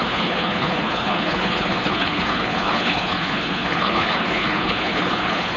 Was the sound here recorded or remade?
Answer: remade